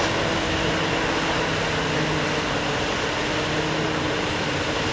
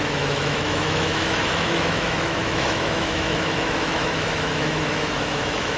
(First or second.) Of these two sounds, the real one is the first